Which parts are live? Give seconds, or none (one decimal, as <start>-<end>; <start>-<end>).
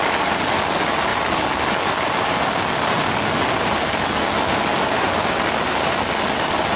0.0-6.8